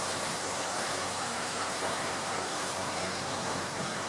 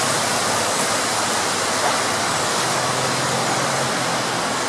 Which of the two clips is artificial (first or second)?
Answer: first